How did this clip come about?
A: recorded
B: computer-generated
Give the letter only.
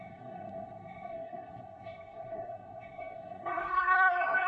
B